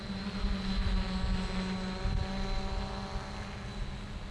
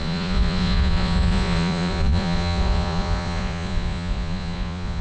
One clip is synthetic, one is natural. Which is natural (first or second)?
first